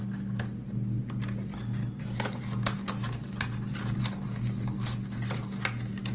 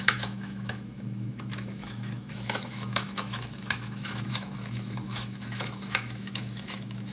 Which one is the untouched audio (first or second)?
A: first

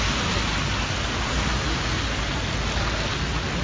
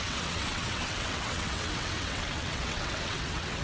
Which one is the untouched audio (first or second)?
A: first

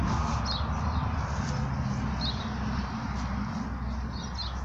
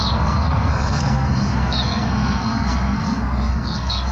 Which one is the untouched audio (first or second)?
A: first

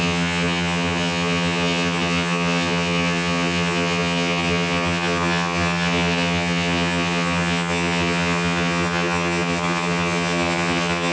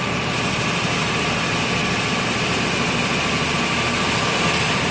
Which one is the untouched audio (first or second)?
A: second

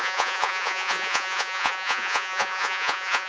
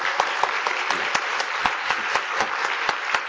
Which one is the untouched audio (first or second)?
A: second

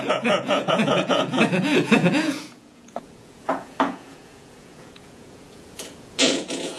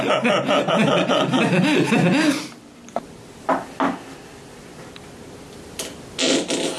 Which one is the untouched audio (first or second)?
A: second